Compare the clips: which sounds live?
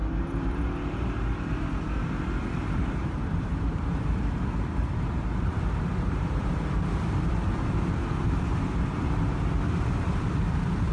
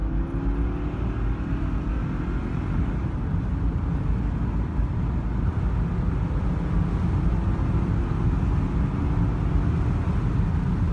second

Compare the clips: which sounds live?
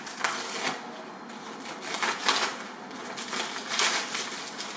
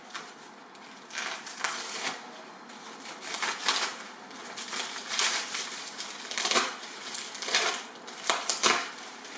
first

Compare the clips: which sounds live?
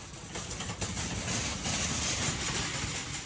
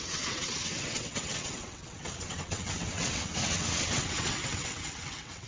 first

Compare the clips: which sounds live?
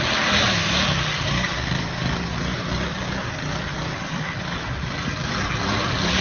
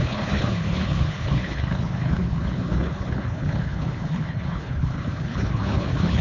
first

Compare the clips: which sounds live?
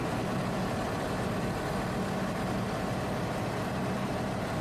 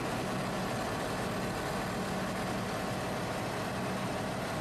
second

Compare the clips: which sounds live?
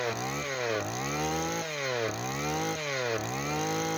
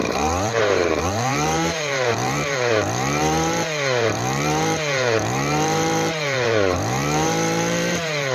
first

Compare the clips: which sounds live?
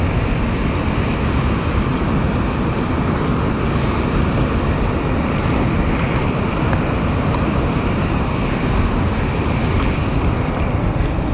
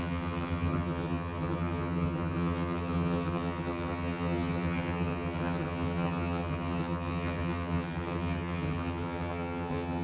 first